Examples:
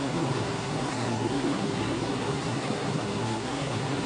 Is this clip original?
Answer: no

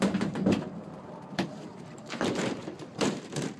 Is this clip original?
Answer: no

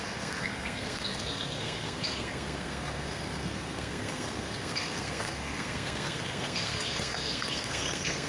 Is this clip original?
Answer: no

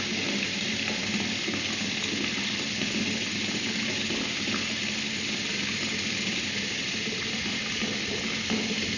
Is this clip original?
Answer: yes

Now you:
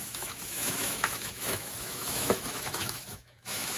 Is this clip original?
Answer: no